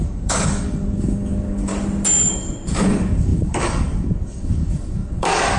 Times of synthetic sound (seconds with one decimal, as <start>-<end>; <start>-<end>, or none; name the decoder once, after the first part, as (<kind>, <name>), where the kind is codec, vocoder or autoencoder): 0.0-1.7 (codec, DAC); 2.3-5.6

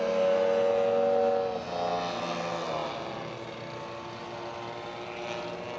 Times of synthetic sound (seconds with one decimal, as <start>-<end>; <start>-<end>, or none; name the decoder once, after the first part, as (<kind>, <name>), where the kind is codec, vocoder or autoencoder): none

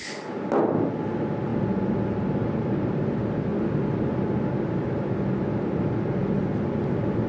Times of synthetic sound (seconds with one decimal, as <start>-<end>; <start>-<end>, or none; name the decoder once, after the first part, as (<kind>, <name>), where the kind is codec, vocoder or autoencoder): none

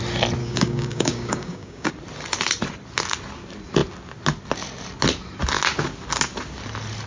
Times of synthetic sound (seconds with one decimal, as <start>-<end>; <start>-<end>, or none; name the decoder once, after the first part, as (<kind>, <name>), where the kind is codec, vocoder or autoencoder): 0.4-1.9 (codec, DAC)

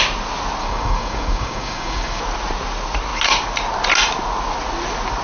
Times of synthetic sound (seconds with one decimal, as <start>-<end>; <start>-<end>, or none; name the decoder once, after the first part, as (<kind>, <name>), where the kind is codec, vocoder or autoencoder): 0.6-2.2 (codec, DAC)

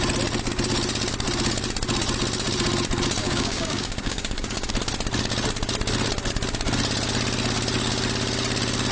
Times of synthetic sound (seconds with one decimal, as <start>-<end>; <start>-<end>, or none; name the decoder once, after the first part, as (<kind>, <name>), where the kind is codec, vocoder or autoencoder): 3.2-4.7 (codec, DAC)